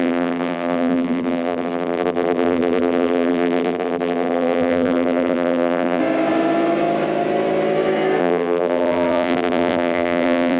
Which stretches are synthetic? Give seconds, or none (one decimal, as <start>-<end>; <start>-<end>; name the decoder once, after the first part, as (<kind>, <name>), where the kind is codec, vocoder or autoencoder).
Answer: 0.0-6.0 (vocoder, BigVGAN v2); 8.2-10.6